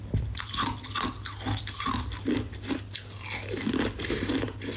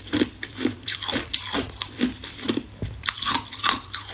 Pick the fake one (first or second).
second